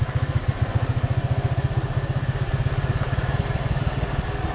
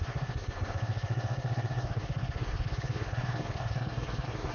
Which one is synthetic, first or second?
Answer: second